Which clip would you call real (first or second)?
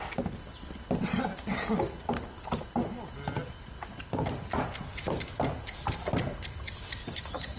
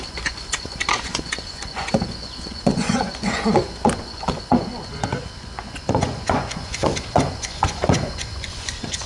first